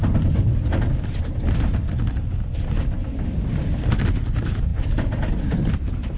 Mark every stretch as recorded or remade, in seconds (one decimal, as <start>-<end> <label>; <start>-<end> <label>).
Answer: 0.0-6.2 recorded